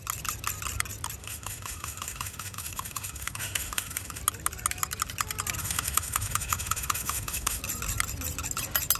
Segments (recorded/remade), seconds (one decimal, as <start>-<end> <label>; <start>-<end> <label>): 0.0-1.2 recorded; 1.2-4.2 remade; 4.2-5.6 recorded; 5.6-7.6 remade; 7.6-9.0 recorded